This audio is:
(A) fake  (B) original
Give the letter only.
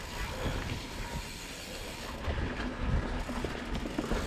B